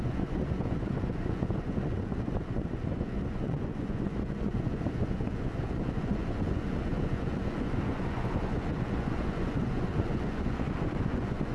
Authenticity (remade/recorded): remade